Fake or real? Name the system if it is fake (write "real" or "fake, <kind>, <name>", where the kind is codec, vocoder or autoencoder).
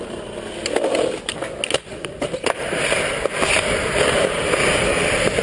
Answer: real